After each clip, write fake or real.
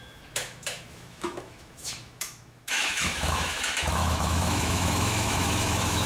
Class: fake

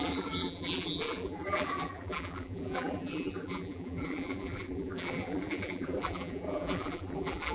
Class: fake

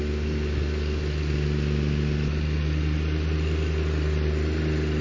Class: real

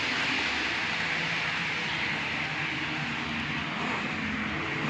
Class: real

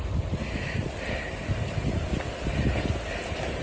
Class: real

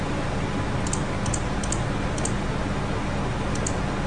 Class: real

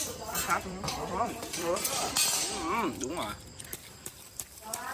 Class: fake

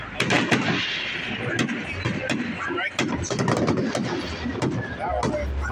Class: real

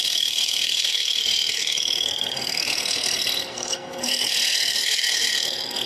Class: fake